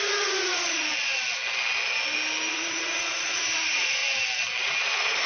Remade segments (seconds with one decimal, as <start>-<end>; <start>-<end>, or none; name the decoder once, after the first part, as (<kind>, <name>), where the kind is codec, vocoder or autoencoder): 0.0-0.9 (vocoder, Vocos); 2.5-4.0; 4.6-5.3